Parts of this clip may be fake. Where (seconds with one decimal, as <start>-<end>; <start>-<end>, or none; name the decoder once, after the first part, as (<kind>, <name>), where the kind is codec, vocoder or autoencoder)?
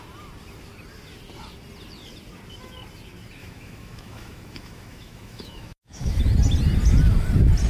3.4-6.2 (autoencoder, DAC-VAE)